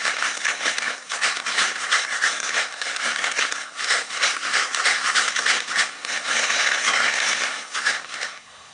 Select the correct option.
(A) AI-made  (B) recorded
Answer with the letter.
A